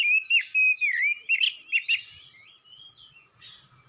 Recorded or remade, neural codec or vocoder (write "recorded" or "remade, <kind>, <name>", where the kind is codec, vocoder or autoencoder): recorded